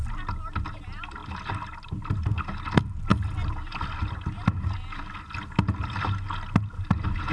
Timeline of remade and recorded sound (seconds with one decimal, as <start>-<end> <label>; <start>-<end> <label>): 0.0-7.3 recorded